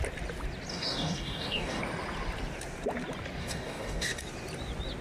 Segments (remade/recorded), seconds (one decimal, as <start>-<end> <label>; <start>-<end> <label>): 0.0-0.7 recorded; 0.7-1.8 remade; 1.8-3.4 recorded; 3.4-4.2 remade; 4.2-5.0 recorded